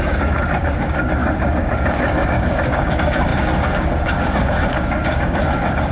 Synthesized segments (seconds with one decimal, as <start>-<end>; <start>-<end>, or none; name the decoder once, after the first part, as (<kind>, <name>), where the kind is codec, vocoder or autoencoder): 0.0-5.9 (codec, DAC)